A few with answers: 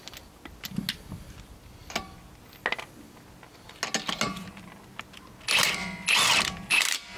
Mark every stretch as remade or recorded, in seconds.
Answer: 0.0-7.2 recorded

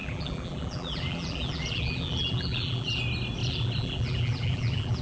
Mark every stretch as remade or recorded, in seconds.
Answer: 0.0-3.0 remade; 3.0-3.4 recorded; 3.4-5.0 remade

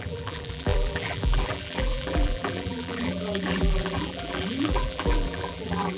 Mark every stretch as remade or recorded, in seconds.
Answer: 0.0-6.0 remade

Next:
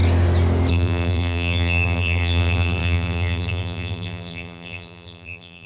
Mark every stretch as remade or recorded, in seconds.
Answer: 0.0-0.7 recorded; 0.7-5.7 remade

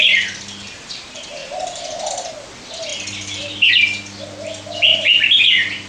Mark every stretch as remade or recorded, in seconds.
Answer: 0.0-1.4 recorded; 1.4-2.1 remade; 2.1-2.9 recorded; 2.9-3.7 remade; 3.7-4.9 recorded; 4.9-5.4 remade; 5.4-5.9 recorded

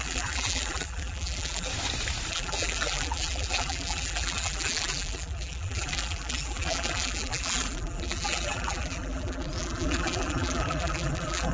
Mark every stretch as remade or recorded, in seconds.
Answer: 0.0-1.7 remade; 1.7-2.3 recorded; 2.3-11.5 remade

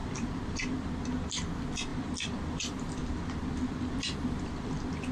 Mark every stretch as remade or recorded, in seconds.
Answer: 0.0-0.9 remade; 0.9-1.9 recorded; 1.9-5.1 remade